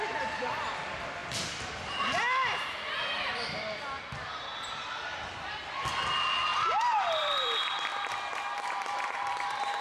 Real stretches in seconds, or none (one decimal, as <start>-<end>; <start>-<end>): 7.9-8.9